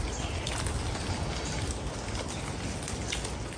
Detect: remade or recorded recorded